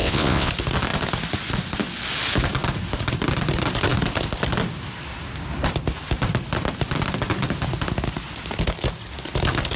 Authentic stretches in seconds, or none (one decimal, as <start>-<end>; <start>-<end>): 0.5-9.8